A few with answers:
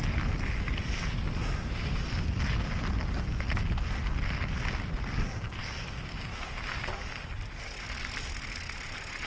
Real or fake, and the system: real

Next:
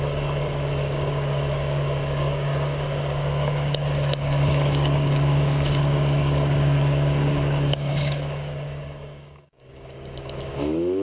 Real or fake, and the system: fake, codec, DAC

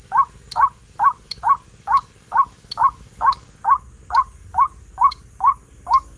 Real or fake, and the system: fake, codec, DAC